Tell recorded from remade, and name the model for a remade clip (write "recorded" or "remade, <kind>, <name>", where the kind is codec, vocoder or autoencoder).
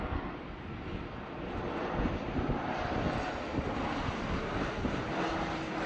recorded